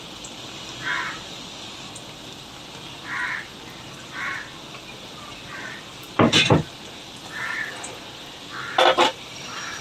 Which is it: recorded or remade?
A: recorded